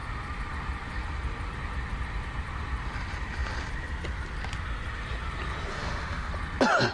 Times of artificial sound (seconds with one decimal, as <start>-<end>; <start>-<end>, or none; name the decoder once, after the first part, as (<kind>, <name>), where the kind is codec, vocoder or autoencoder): 5.7-6.3 (autoencoder, DAC-VAE)